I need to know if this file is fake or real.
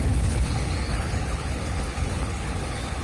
fake